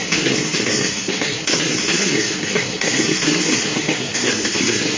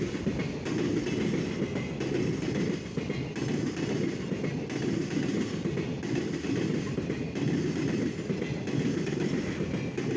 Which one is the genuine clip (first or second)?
second